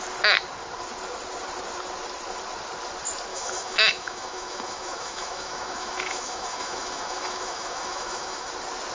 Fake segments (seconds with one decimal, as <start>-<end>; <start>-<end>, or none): 3.3-8.5